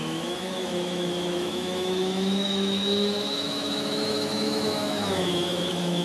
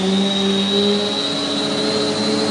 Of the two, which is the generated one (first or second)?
first